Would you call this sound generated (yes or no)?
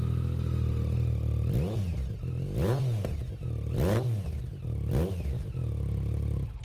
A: no